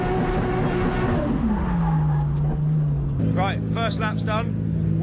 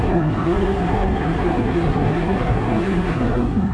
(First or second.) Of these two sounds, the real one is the first